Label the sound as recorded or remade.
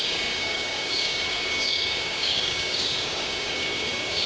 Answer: remade